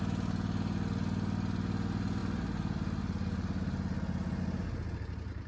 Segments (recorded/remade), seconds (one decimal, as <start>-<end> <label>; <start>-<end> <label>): 0.0-5.5 recorded